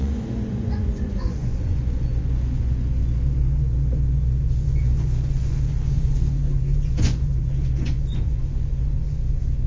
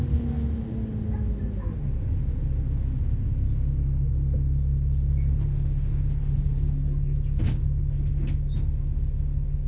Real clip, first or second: second